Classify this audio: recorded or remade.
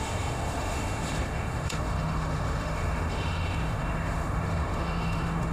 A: remade